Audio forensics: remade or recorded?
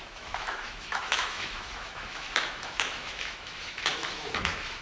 remade